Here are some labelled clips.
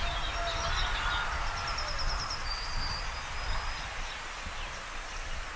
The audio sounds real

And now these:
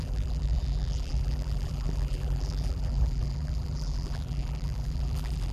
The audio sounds fake